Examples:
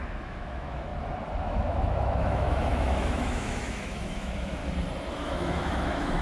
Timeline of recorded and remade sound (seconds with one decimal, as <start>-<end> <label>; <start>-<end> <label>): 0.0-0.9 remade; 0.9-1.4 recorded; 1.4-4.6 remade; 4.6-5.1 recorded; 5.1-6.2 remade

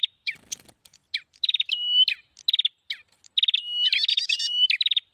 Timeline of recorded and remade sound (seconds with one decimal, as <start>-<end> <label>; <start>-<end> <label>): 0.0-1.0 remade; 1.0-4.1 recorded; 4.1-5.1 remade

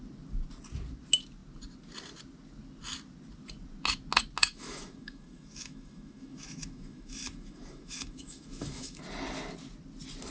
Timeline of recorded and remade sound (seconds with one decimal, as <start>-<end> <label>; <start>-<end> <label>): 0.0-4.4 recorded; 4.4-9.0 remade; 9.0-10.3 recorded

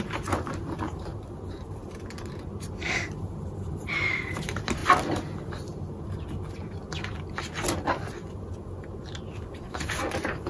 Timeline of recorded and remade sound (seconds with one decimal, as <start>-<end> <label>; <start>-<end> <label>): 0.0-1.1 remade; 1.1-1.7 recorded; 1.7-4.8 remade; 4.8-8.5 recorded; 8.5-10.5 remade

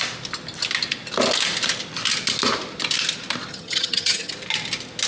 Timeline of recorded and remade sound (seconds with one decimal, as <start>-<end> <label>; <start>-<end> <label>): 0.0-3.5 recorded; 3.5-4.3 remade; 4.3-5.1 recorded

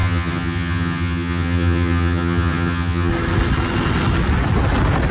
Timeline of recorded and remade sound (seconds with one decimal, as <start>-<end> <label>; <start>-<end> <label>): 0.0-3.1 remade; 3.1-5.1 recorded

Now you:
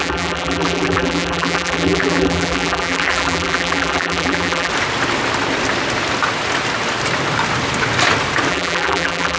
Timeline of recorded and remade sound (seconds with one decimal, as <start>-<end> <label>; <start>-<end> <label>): 0.0-4.7 remade; 4.7-8.5 recorded; 8.5-9.4 remade

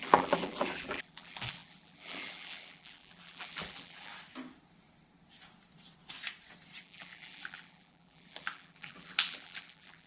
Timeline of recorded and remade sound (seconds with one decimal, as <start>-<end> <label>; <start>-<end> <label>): 0.0-4.1 remade; 4.1-6.8 recorded; 6.8-10.1 remade